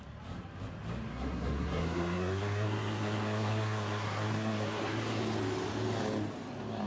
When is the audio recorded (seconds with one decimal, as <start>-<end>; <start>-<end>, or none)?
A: 0.0-1.1; 5.2-6.9